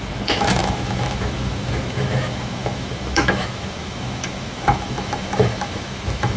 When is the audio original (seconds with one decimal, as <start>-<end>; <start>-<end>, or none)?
none